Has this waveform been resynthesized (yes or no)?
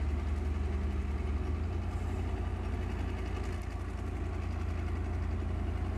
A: no